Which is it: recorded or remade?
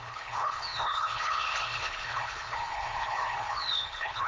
remade